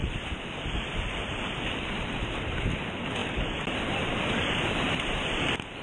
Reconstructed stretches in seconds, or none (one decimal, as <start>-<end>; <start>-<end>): 0.0-1.8; 3.2-4.3